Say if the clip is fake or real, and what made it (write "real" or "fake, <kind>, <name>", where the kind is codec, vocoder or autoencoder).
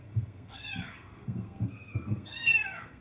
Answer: fake, codec, SNAC